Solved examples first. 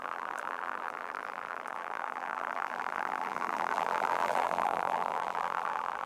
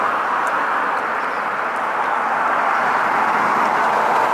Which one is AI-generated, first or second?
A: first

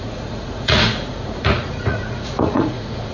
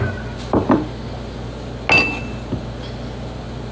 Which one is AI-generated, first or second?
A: first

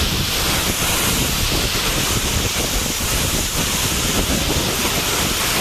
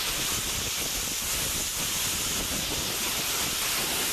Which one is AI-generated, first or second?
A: first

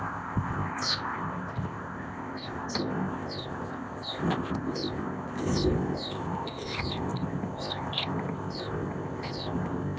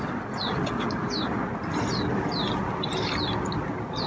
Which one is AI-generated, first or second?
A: first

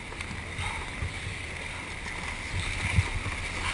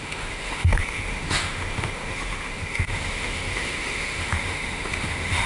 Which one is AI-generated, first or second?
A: second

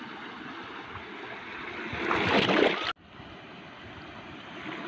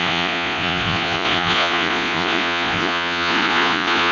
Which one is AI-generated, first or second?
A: second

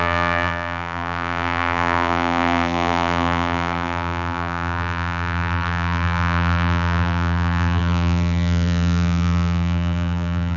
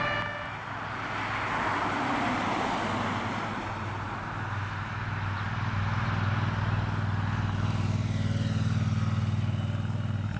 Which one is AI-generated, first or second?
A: first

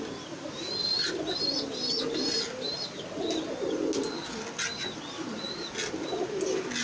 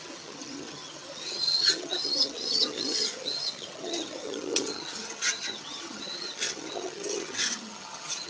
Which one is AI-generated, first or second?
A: second